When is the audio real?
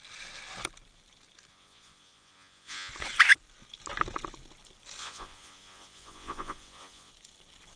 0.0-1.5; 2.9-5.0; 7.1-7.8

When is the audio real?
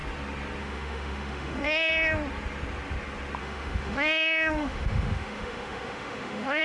0.0-0.6; 1.9-3.4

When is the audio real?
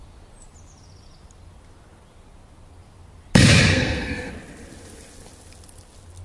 0.0-3.7; 4.3-6.2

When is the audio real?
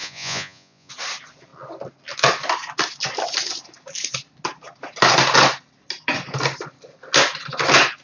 0.9-8.0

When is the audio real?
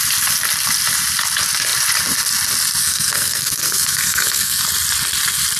0.0-2.8; 4.6-5.6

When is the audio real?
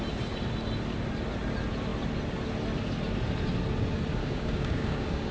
0.0-4.2